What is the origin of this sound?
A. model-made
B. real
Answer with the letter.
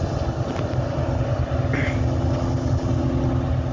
B